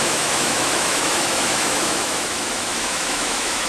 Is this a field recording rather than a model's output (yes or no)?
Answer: no